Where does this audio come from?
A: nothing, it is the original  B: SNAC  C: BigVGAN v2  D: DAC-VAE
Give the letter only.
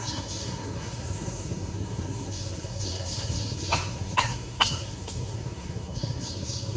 B